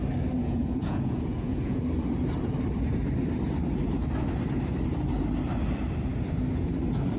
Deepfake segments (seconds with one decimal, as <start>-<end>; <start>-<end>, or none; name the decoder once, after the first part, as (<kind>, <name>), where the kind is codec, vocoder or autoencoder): 0.4-1.8 (vocoder, Vocos)